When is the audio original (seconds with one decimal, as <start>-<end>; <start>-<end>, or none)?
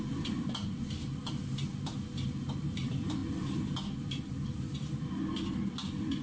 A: 0.0-6.2